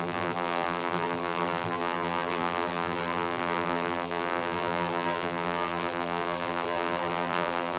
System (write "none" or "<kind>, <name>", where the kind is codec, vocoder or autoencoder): vocoder, BigVGAN v2